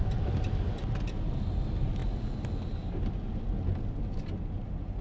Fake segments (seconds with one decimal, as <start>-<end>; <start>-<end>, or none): none